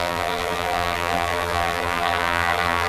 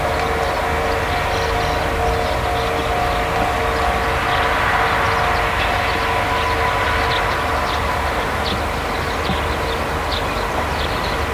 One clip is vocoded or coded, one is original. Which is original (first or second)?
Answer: second